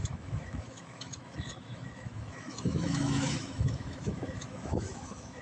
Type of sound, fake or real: fake